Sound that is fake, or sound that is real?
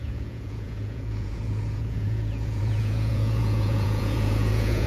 fake